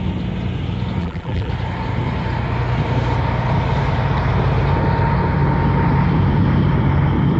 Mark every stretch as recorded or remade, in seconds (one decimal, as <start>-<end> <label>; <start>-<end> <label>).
0.0-1.0 recorded; 1.0-1.5 remade; 1.5-7.4 recorded

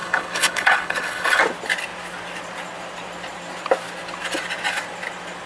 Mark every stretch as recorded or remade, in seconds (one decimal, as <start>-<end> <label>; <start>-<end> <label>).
0.0-1.4 remade; 1.4-5.5 recorded

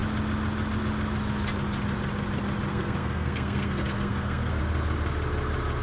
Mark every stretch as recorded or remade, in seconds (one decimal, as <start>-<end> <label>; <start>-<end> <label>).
0.0-2.7 recorded; 2.7-4.6 remade; 4.6-5.8 recorded

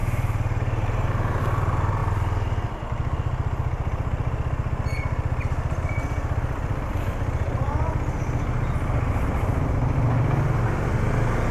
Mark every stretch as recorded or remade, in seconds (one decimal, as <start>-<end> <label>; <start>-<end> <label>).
0.0-1.4 remade; 1.4-11.5 recorded